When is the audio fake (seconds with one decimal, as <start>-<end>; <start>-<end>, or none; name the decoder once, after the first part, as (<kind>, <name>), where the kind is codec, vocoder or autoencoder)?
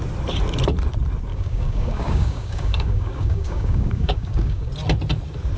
1.3-4.7 (codec, DAC)